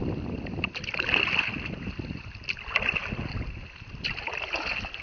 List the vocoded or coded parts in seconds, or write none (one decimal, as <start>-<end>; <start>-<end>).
none